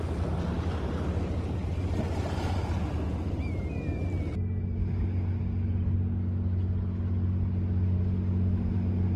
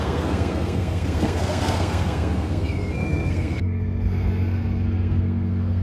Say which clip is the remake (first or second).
second